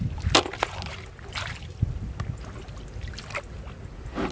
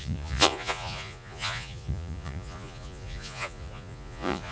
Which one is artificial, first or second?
second